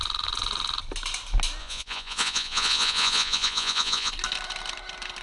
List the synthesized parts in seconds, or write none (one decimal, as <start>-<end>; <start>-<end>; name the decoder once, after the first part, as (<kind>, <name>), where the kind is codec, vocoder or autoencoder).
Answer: 1.6-4.1 (vocoder, Vocos)